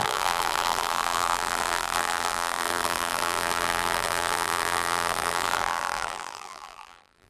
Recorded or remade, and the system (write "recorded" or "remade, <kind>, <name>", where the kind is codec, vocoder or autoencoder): remade, vocoder, BigVGAN v2